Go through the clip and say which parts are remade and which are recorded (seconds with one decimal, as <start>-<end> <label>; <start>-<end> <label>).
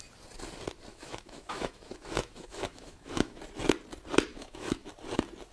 0.0-0.9 recorded; 0.9-3.4 remade; 3.4-4.3 recorded; 4.3-4.9 remade; 4.9-5.5 recorded